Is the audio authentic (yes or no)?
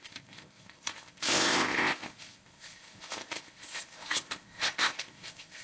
no